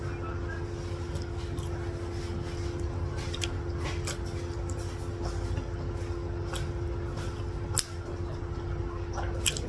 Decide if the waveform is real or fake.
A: real